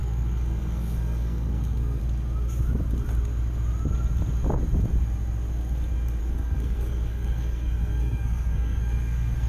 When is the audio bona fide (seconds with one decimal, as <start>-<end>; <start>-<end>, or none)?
2.0-6.2